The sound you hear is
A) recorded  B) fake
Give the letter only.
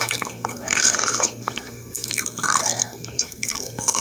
B